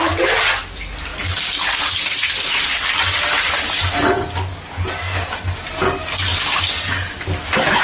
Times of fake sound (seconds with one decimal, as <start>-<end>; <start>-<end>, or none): none